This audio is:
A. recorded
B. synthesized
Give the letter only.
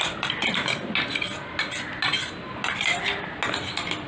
A